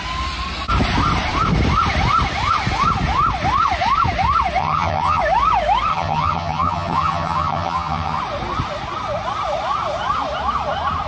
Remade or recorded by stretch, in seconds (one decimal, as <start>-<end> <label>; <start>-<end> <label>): 0.0-4.6 recorded; 4.6-5.2 remade; 5.2-5.9 recorded; 5.9-8.2 remade; 8.2-11.1 recorded